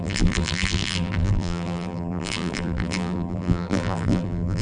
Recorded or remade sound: remade